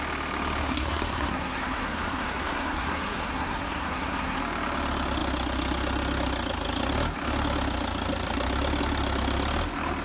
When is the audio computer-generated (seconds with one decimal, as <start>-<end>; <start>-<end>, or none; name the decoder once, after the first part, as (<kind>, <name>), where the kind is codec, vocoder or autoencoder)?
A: 0.6-4.4 (codec, SNAC)